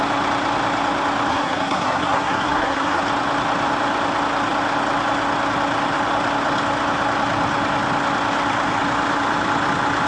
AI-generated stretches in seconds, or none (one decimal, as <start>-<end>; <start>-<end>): 1.3-3.0